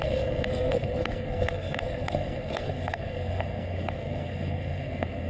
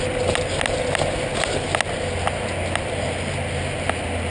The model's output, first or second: first